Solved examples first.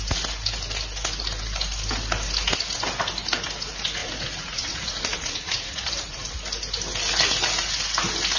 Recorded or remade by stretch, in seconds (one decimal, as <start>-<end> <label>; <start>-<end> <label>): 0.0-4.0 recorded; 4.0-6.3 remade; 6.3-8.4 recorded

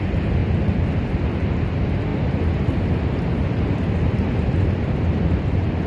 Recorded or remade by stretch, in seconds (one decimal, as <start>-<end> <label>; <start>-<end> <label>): 0.0-0.4 remade; 0.4-1.7 recorded; 1.7-2.1 remade; 2.1-4.4 recorded; 4.4-5.9 remade

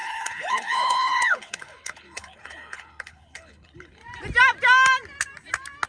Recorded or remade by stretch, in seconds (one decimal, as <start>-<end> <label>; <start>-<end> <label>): 0.0-4.0 remade; 4.0-5.9 recorded

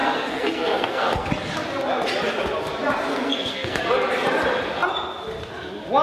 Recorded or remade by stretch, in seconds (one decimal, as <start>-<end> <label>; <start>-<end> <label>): 0.0-1.3 remade; 1.3-3.1 recorded; 3.1-3.8 remade; 3.8-6.0 recorded

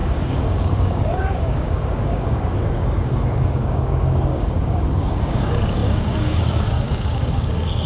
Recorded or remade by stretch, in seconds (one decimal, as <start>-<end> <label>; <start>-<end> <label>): 0.0-7.9 remade

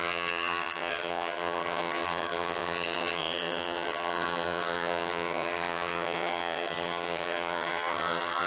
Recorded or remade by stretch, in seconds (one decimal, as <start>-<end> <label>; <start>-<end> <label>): 0.0-8.5 remade